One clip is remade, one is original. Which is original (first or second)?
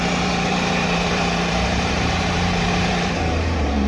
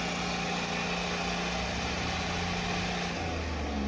second